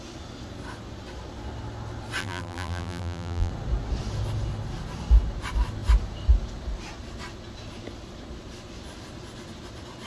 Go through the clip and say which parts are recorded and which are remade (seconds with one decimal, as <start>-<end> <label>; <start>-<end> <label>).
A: 0.0-2.2 recorded; 2.2-3.5 remade; 3.5-10.1 recorded